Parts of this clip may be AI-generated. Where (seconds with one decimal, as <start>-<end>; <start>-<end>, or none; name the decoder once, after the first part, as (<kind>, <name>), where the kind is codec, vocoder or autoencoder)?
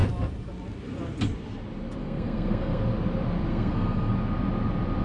2.0-2.8 (codec, SNAC); 3.5-4.1